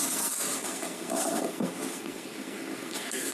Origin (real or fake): fake